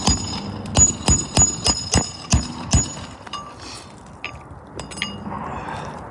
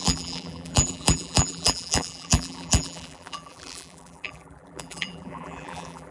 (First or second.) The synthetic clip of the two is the second